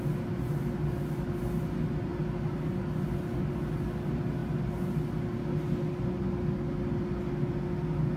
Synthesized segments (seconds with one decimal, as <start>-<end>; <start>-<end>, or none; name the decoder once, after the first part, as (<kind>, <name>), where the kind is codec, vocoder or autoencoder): none